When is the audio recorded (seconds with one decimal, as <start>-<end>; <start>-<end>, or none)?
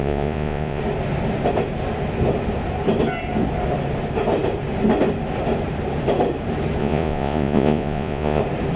0.8-6.8; 8.4-8.8